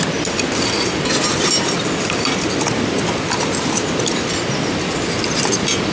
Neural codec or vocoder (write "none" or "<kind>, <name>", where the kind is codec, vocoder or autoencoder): none